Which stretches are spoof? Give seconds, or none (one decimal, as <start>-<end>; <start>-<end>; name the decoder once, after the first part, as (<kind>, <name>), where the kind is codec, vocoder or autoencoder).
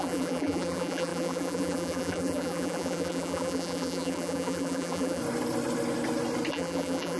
0.0-5.2 (vocoder, BigVGAN v2); 6.5-7.2